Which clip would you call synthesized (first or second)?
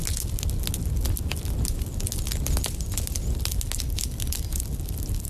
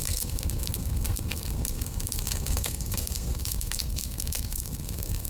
second